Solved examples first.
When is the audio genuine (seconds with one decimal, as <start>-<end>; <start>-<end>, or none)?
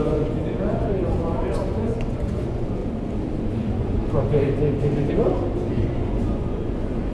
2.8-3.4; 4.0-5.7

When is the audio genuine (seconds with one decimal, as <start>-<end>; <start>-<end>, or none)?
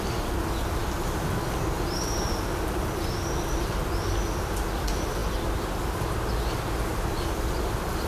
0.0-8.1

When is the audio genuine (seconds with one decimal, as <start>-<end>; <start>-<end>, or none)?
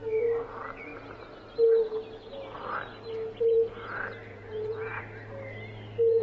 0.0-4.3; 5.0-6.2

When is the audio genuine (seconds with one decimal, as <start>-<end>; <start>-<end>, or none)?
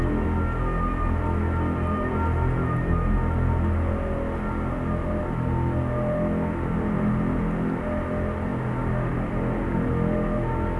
0.0-10.8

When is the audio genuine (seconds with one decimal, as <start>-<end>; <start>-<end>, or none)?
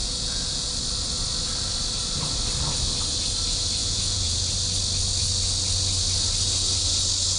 0.7-3.8; 4.5-7.4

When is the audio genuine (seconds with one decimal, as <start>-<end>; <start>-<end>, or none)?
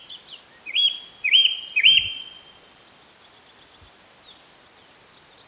0.0-5.5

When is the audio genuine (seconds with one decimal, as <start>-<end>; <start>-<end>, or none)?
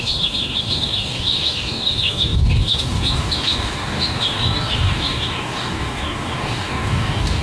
none